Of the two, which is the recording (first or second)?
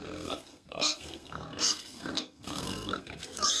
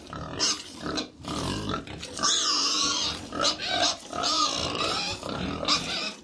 second